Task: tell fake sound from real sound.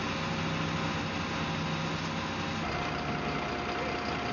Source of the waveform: real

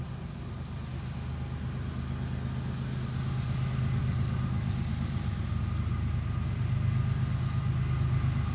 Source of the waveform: real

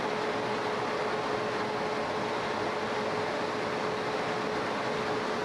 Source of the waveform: real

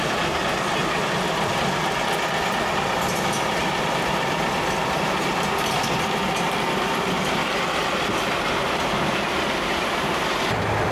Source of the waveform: real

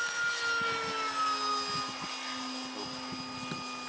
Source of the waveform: real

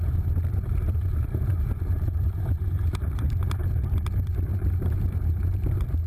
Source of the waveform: fake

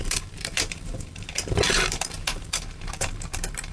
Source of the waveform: fake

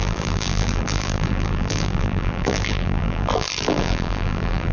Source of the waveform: fake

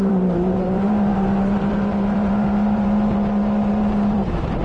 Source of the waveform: fake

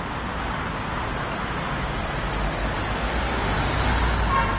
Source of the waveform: real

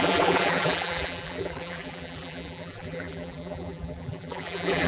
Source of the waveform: fake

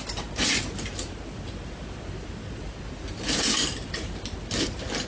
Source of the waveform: real